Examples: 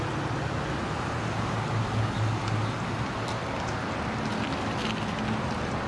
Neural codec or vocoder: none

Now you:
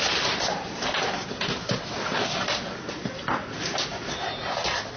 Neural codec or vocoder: none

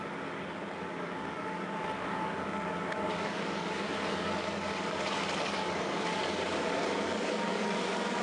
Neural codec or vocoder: codec, DAC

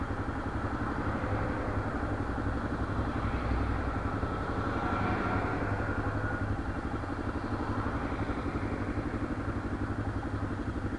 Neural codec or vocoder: none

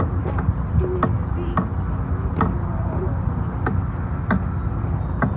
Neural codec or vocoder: none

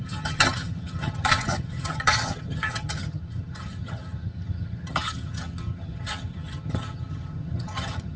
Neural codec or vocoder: vocoder, HiFi-GAN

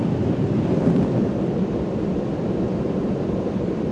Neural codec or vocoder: none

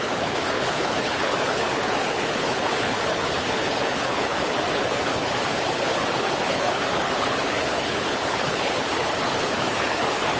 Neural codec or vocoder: codec, HILCodec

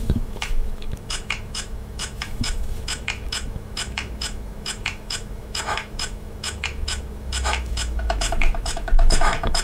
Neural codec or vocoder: autoencoder, DAC-VAE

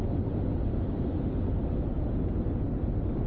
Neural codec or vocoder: none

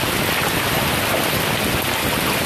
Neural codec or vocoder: none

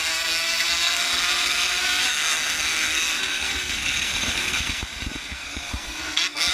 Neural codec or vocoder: codec, SNAC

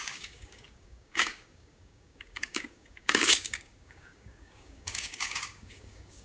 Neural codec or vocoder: codec, DAC